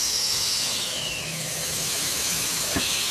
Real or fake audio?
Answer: fake